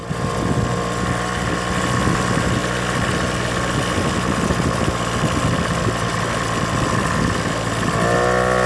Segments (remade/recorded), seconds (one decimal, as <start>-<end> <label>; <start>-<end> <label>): 0.0-8.7 recorded